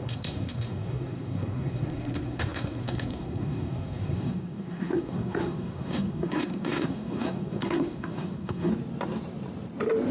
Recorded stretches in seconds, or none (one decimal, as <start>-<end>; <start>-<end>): 8.7-10.1